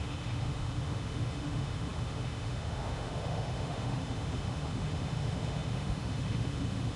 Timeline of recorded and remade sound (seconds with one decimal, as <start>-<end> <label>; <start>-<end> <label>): 0.0-7.0 remade